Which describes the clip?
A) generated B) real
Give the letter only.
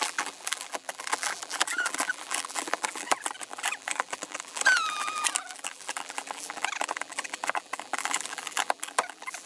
A